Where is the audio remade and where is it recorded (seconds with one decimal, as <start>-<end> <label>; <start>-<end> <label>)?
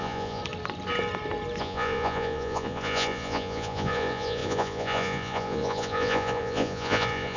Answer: 0.0-0.4 remade; 0.4-1.6 recorded; 1.6-7.4 remade